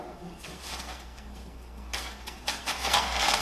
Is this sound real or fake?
fake